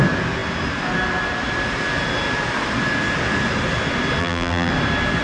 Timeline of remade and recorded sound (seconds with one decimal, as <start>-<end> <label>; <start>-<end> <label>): 0.0-4.2 recorded; 4.2-4.7 remade; 4.7-5.2 recorded